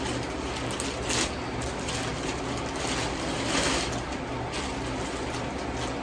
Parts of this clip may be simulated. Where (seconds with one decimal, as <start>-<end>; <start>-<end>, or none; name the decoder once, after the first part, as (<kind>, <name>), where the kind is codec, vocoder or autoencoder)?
none